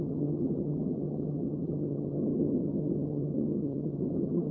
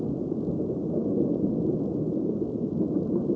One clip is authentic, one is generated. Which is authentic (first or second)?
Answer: second